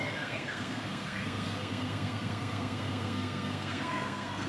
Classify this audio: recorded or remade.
remade